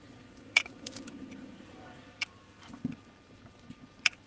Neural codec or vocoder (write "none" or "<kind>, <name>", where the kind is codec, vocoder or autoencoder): vocoder, BigVGAN v2